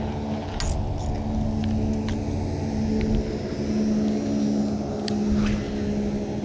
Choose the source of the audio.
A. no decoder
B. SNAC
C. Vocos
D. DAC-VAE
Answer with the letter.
A